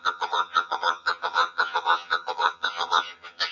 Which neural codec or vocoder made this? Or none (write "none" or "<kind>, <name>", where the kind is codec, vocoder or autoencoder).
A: vocoder, HiFi-GAN